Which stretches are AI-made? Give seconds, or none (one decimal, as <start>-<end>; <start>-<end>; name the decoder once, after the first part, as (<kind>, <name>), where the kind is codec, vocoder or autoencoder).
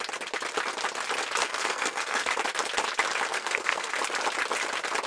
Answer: 1.4-2.3 (codec, SNAC); 3.3-3.9